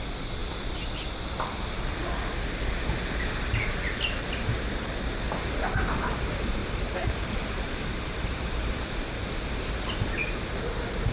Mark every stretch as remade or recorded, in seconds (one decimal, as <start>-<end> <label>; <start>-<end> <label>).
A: 0.0-6.6 recorded; 6.6-9.1 remade; 9.1-11.1 recorded